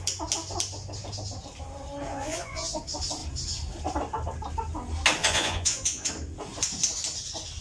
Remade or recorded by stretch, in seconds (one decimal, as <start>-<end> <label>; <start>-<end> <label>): 0.0-2.1 recorded; 2.1-2.8 remade; 2.8-5.2 recorded; 5.2-6.1 remade; 6.1-7.6 recorded

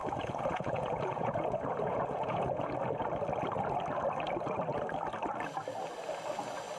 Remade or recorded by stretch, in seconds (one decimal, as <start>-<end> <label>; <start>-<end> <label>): 0.0-2.7 remade; 2.7-6.8 recorded

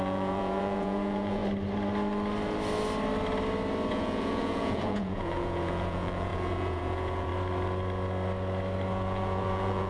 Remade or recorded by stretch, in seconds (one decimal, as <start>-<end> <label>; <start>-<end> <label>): 0.0-1.4 remade; 1.4-3.9 recorded; 3.9-7.3 remade; 7.3-8.9 recorded; 8.9-9.9 remade

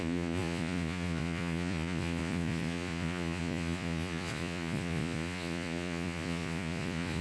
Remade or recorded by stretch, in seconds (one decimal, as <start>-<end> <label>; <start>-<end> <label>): 0.0-7.2 remade

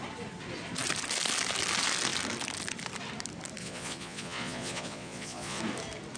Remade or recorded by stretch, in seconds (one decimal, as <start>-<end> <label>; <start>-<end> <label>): 0.0-3.6 recorded; 3.6-5.6 remade; 5.6-6.2 recorded